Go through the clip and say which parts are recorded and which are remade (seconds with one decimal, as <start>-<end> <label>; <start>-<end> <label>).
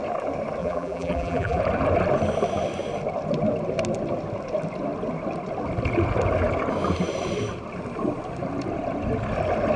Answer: 0.0-0.6 recorded; 0.6-1.6 remade; 1.6-9.8 recorded